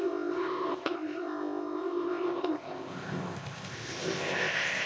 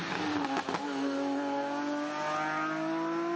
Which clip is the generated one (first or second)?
first